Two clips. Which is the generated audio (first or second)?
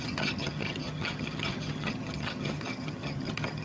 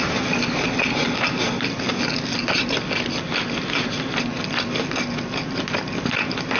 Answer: first